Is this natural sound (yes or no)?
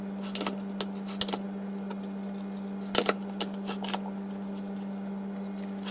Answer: yes